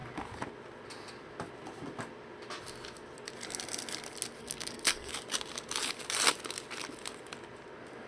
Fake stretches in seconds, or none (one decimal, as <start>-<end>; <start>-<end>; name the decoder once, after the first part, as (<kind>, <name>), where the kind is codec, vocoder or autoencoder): 4.4-5.1 (codec, SNAC)

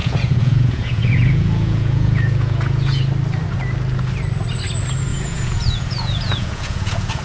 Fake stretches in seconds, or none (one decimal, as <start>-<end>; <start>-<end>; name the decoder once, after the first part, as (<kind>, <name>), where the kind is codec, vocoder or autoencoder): 0.0-3.0 (vocoder, Vocos); 5.1-7.2

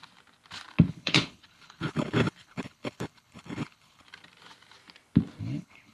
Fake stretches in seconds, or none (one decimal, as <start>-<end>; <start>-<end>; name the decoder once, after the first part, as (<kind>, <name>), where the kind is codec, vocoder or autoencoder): 0.9-4.0 (codec, HILCodec); 5.4-5.9

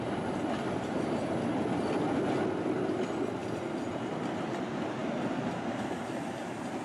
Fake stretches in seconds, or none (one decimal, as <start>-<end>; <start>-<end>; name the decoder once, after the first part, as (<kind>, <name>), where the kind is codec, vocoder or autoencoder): none